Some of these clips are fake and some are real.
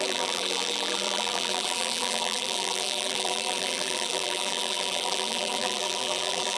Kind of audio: fake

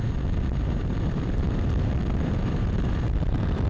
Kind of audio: fake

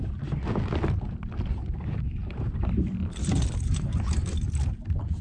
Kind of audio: fake